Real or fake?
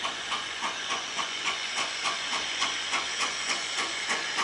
fake